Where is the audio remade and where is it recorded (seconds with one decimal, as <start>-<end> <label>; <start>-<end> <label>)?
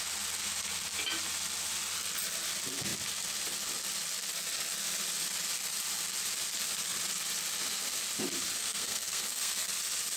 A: 0.0-8.6 recorded; 8.6-9.7 remade; 9.7-10.2 recorded